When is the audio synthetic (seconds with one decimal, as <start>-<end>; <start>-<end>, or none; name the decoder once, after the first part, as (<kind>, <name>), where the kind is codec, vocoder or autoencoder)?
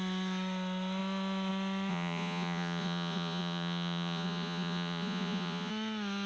1.9-5.7 (vocoder, Vocos)